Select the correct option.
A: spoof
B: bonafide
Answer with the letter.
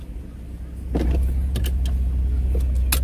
B